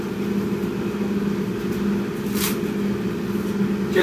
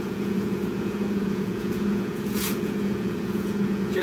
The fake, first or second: second